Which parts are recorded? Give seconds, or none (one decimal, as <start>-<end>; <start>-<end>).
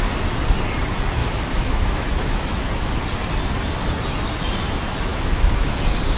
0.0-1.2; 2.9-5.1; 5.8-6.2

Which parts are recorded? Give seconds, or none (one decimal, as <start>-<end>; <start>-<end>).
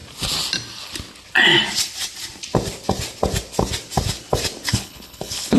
0.0-4.7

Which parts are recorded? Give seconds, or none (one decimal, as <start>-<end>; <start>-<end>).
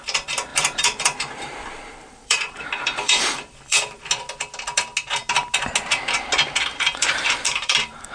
0.0-0.5; 4.0-6.7